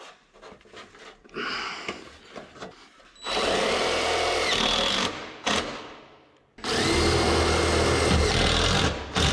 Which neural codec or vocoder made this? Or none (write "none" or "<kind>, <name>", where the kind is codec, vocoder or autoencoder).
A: none